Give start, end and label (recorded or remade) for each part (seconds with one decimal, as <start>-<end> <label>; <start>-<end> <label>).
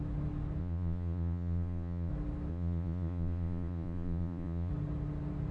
0.0-0.6 recorded; 0.6-2.1 remade; 2.1-2.5 recorded; 2.5-4.7 remade; 4.7-5.5 recorded